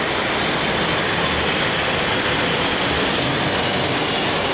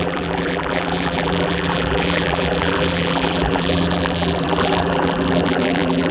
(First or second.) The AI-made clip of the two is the second